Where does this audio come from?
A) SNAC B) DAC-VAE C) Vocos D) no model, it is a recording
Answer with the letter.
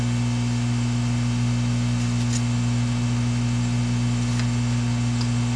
D